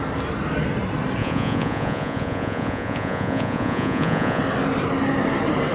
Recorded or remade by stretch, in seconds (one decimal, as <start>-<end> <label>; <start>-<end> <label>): 0.0-1.2 recorded; 1.2-4.4 remade; 4.4-5.7 recorded